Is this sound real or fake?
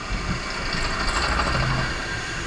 real